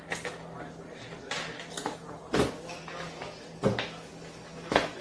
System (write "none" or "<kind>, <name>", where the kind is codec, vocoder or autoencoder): none